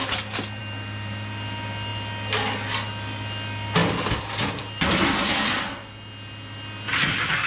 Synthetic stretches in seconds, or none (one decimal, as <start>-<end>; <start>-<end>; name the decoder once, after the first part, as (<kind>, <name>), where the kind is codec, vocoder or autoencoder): none